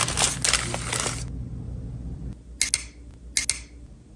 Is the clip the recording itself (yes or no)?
yes